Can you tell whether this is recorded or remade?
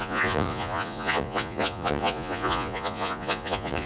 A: remade